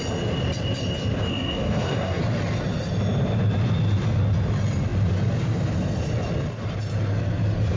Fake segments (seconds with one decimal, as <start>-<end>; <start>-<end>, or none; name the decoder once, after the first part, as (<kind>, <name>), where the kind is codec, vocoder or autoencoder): 1.3-2.2 (codec, SNAC)